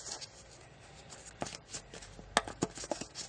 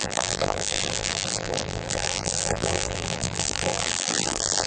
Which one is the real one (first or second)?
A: first